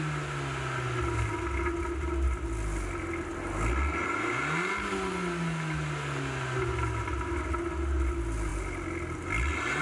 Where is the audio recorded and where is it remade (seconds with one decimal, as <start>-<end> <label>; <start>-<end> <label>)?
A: 0.0-9.8 recorded